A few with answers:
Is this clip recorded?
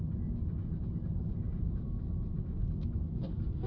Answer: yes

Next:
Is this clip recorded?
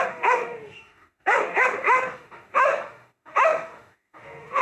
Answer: no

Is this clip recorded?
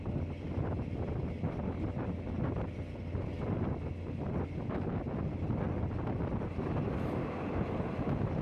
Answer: yes